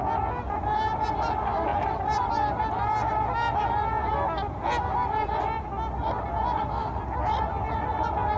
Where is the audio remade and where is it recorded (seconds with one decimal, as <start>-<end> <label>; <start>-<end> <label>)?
0.0-1.7 recorded; 1.7-2.3 remade; 2.3-8.4 recorded